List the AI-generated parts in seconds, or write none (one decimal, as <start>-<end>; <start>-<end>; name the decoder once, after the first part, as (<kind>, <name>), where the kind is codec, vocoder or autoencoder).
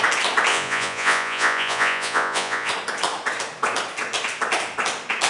0.5-2.7 (vocoder, Vocos)